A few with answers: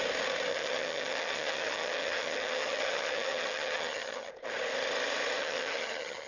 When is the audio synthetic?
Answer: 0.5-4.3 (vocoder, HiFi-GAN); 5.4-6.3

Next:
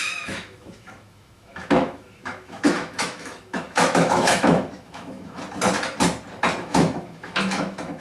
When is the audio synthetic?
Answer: 0.0-5.4 (autoencoder, DAC-VAE); 6.6-8.0

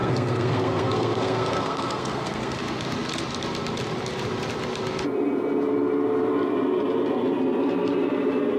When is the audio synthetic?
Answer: 0.0-2.6 (codec, SNAC)

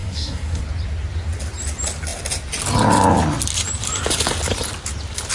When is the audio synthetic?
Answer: 0.0-0.6 (codec, SNAC)